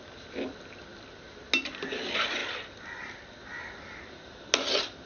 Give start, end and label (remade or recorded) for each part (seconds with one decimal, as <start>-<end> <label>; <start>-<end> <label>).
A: 0.0-5.1 recorded